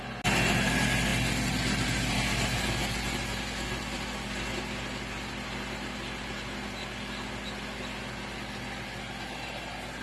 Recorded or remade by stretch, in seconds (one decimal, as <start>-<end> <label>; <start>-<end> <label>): 0.0-10.0 recorded